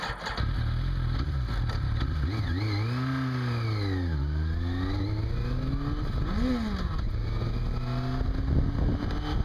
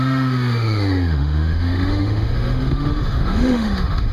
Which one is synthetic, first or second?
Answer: second